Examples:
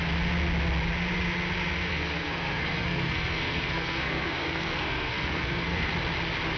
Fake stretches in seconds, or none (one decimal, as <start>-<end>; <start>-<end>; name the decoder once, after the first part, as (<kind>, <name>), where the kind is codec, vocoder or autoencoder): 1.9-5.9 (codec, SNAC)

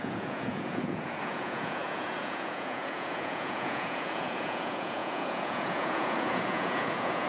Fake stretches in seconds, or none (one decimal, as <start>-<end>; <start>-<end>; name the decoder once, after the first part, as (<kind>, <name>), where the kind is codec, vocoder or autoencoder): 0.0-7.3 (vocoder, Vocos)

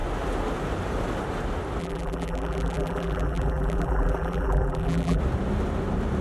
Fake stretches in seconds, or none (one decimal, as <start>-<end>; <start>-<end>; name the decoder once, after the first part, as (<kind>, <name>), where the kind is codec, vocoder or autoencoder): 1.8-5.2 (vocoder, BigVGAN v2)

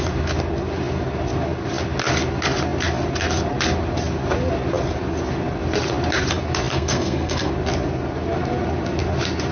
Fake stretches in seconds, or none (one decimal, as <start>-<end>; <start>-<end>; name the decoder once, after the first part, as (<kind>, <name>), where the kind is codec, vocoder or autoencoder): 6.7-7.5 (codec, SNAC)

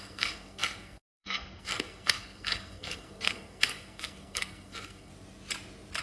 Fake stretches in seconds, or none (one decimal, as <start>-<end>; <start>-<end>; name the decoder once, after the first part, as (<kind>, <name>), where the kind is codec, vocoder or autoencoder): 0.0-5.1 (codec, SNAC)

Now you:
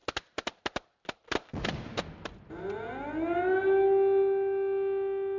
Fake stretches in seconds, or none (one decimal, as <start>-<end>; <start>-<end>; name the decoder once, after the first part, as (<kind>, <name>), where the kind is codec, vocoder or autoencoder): none

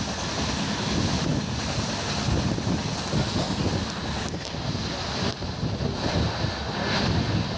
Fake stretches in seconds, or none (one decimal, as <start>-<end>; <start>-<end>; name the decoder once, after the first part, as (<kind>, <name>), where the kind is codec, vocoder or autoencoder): none

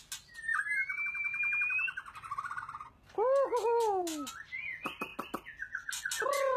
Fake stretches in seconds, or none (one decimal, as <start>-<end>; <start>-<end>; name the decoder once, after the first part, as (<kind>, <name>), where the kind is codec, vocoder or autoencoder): none